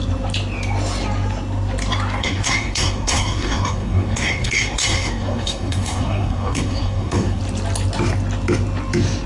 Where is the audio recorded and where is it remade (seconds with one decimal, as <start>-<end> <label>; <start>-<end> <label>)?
0.0-2.2 recorded; 2.2-7.4 remade; 7.4-9.3 recorded